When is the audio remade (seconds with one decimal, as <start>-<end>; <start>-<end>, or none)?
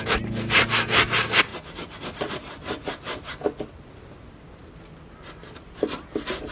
none